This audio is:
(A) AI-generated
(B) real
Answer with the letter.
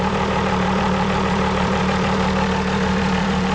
A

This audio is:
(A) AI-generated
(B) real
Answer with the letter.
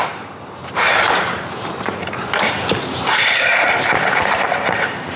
A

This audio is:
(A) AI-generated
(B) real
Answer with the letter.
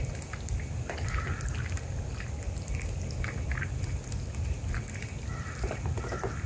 B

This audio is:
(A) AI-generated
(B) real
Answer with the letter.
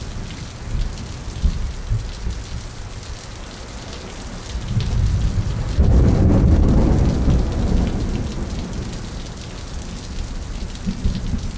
B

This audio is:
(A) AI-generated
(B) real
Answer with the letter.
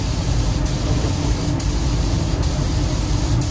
B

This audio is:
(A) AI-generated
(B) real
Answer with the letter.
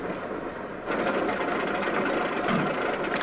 B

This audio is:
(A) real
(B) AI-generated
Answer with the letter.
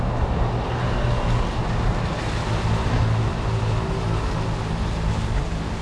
A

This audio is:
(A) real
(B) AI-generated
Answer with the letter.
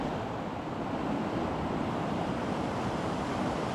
A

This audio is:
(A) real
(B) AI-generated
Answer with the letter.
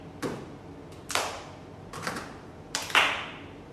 A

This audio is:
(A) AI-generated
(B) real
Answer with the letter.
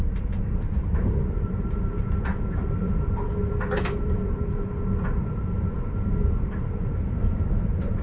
A